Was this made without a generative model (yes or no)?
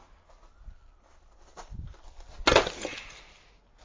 yes